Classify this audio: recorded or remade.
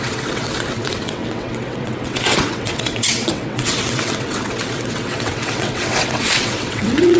remade